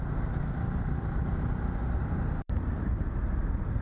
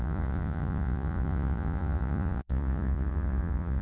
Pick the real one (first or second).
first